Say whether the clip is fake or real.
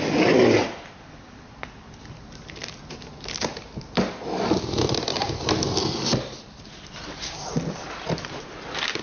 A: real